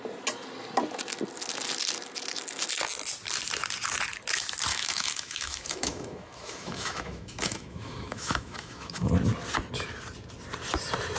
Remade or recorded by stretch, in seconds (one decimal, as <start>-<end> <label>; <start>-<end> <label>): 0.0-4.7 recorded; 4.7-9.1 remade; 9.1-11.2 recorded